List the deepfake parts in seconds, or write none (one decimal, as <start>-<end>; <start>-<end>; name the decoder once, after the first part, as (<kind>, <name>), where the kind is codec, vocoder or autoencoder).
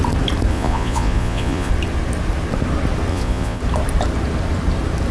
0.5-1.7 (vocoder, Vocos); 3.1-3.6